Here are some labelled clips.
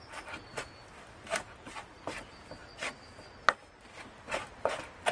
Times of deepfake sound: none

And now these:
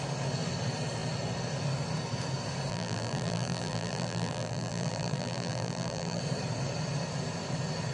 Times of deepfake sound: 2.7-6.2 (vocoder, BigVGAN v2)

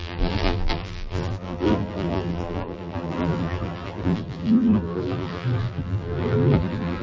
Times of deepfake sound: 0.0-7.0 (vocoder, BigVGAN v2)

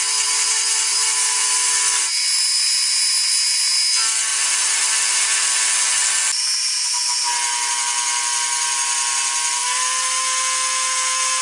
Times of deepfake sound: 0.9-1.5 (vocoder, BigVGAN v2); 4.3-5.5; 9.6-10.2

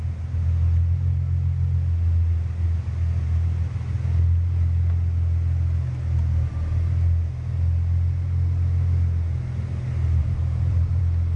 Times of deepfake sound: 10.2-11.0 (vocoder, BigVGAN v2)

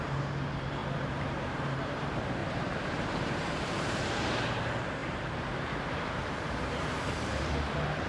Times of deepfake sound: 0.0-0.8 (vocoder, BigVGAN v2); 1.4-2.4; 3.4-8.1

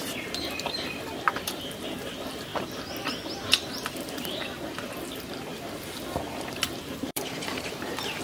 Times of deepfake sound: 0.0-2.5 (vocoder, BigVGAN v2); 4.0-5.5; 6.5-8.2